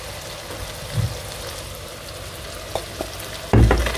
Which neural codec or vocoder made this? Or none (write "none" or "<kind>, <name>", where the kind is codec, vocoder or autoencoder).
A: none